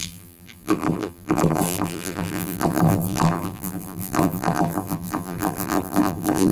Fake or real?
fake